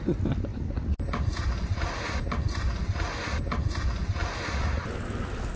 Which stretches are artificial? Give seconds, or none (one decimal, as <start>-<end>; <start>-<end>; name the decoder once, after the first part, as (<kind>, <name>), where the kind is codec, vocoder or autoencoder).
none